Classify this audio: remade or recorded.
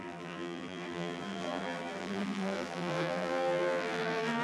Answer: remade